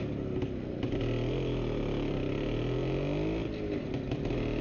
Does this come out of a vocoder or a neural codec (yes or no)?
no